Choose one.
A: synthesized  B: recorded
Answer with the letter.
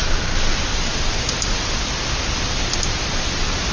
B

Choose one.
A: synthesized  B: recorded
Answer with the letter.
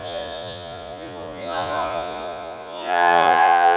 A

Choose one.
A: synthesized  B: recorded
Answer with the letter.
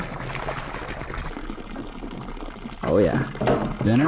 B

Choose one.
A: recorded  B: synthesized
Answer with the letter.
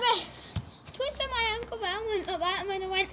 A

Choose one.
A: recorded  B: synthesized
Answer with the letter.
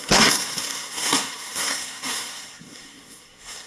B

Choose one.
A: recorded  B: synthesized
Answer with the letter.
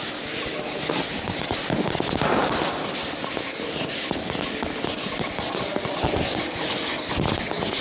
A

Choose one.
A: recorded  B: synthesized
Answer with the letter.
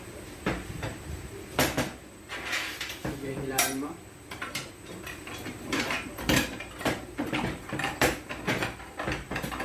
B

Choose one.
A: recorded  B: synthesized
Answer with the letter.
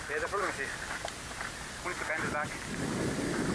A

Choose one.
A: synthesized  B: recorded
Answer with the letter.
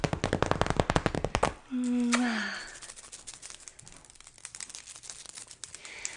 B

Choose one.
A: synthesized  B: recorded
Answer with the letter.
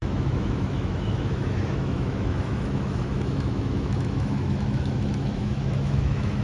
A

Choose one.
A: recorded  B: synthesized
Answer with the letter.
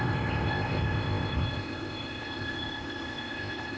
B